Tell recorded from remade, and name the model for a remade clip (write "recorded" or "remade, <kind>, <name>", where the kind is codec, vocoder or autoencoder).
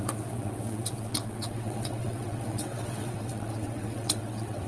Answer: remade, vocoder, WaveNeXt